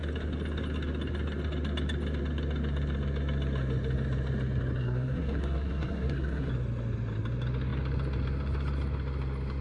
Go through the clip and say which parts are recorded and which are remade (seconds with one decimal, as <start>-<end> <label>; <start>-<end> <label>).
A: 0.0-4.8 recorded; 4.8-6.5 remade; 6.5-9.6 recorded